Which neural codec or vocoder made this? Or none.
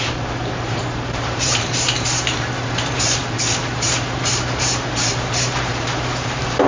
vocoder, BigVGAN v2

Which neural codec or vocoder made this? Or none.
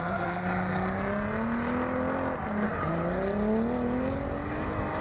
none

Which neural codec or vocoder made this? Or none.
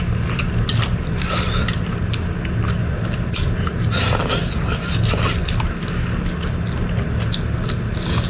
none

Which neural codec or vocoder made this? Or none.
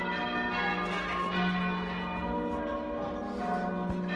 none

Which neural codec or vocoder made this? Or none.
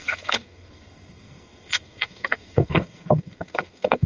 codec, SNAC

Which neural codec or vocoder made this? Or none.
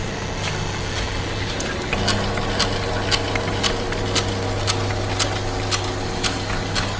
none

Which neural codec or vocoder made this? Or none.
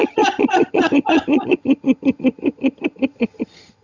vocoder, HiFi-GAN